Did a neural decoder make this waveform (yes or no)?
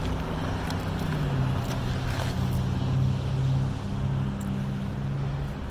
no